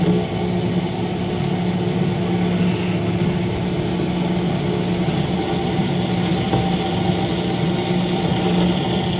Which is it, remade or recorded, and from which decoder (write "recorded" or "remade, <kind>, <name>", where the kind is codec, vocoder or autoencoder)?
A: recorded